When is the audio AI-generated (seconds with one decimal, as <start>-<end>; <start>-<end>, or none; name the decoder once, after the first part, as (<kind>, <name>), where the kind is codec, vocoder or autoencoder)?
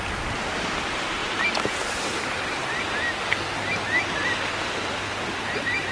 0.0-1.2 (vocoder, BigVGAN v2); 4.7-5.9